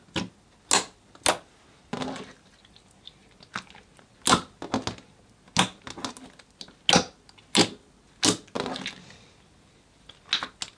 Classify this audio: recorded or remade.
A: recorded